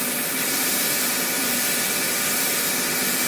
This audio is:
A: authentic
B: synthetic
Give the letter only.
A